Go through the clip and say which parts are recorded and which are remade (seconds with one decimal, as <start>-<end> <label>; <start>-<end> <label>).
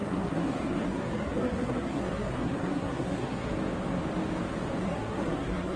0.0-3.5 remade; 3.5-4.8 recorded; 4.8-5.8 remade